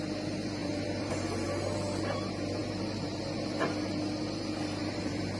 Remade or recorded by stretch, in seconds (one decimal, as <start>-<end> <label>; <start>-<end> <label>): 0.0-0.6 recorded; 0.6-1.1 remade; 1.1-2.6 recorded; 2.6-3.2 remade; 3.2-4.8 recorded; 4.8-5.4 remade